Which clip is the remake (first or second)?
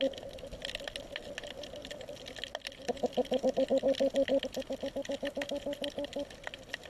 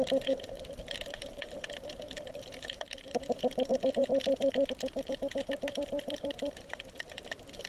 second